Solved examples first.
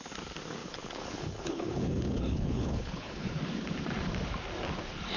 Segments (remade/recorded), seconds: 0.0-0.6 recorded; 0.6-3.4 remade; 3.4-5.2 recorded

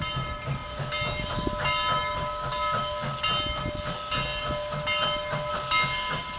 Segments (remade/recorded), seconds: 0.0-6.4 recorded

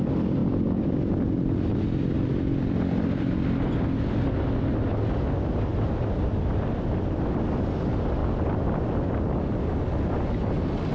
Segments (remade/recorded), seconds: 0.0-0.4 recorded; 0.4-4.3 remade; 4.3-5.7 recorded; 5.7-6.9 remade; 6.9-8.2 recorded; 8.2-9.1 remade; 9.1-10.9 recorded

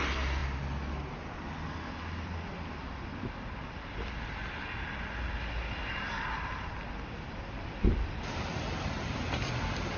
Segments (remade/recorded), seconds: 0.0-10.0 recorded

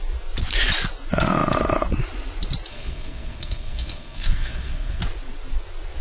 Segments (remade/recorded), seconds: 0.0-2.7 recorded; 2.7-5.0 remade; 5.0-6.0 recorded

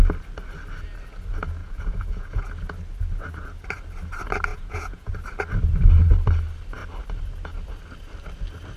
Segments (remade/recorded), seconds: 0.0-1.6 recorded; 1.6-2.5 remade; 2.5-4.5 recorded; 4.5-5.1 remade; 5.1-8.8 recorded

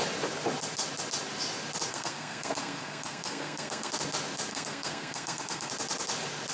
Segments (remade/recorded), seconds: 0.0-1.9 recorded; 1.9-3.9 remade; 3.9-4.5 recorded; 4.5-5.7 remade; 5.7-6.5 recorded

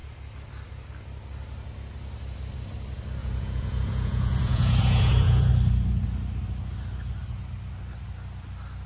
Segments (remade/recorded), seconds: 0.0-3.2 recorded; 3.2-5.5 remade; 5.5-8.9 recorded